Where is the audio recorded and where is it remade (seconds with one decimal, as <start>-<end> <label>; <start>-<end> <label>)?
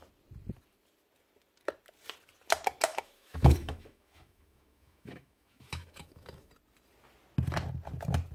0.0-2.9 recorded; 2.9-6.5 remade; 6.5-8.3 recorded